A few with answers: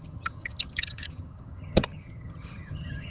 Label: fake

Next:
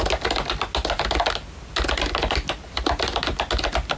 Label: real